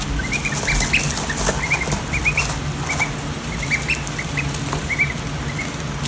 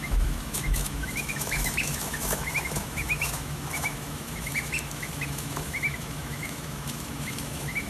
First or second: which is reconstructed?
second